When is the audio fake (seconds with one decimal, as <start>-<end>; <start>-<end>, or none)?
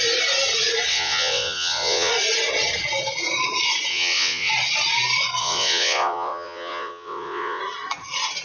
0.9-2.1; 3.9-4.5; 5.4-7.6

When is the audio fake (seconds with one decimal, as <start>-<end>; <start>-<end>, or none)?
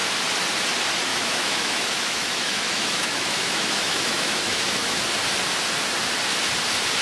1.1-5.0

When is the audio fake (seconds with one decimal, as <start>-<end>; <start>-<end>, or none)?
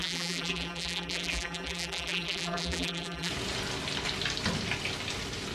0.0-3.3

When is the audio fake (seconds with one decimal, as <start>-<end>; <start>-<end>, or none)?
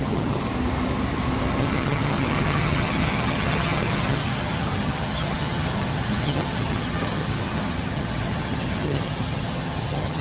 0.0-0.5; 1.5-10.2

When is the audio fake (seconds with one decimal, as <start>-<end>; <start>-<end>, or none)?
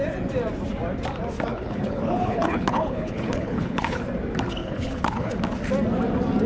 1.5-4.0; 4.6-5.3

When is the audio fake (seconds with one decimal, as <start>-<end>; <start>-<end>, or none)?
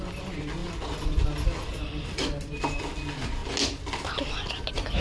none